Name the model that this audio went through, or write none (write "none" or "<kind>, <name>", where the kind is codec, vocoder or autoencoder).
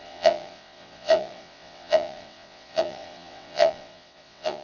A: vocoder, WaveNeXt